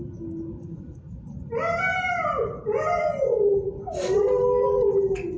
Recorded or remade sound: recorded